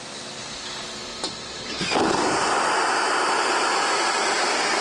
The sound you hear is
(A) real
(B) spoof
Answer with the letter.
A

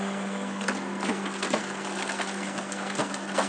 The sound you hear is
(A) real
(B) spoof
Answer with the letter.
B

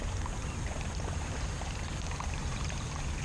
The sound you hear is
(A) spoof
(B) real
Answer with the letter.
A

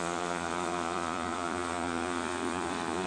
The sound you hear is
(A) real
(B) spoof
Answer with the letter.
B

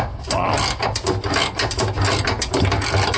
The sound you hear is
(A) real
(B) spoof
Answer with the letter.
A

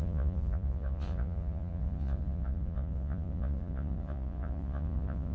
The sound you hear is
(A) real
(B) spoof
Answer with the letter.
B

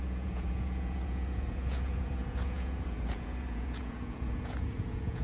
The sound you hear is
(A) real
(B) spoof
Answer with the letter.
B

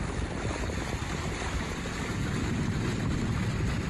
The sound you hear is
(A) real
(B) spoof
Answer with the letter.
A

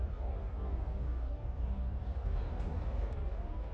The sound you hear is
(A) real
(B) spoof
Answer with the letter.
B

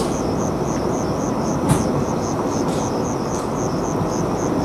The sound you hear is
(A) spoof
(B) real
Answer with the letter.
B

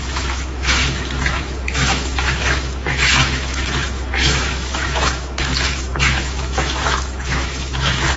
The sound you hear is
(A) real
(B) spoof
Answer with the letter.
B